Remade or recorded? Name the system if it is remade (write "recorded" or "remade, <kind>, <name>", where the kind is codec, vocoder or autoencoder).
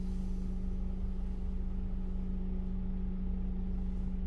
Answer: recorded